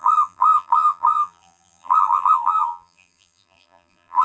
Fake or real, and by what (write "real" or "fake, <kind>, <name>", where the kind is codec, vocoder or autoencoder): fake, vocoder, BigVGAN v2